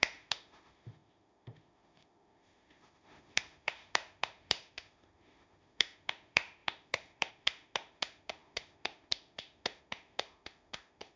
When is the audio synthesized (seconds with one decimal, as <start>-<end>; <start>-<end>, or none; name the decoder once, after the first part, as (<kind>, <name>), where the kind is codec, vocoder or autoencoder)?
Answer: 0.0-11.2 (autoencoder, DAC-VAE)